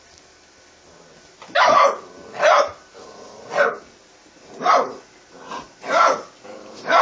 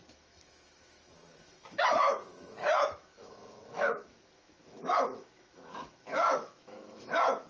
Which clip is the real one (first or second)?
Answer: first